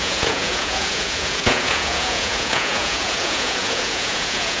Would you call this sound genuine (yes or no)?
no